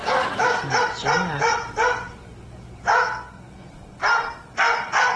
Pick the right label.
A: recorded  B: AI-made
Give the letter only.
B